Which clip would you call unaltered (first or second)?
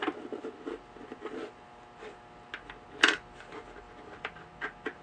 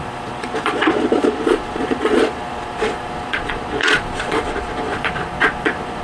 first